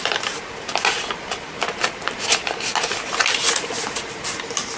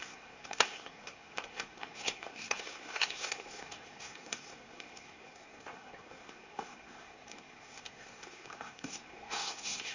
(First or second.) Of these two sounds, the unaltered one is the first